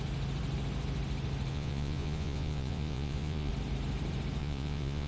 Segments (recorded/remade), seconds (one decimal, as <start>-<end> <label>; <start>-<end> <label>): 0.0-1.5 recorded; 1.5-3.5 remade; 3.5-4.4 recorded; 4.4-5.1 remade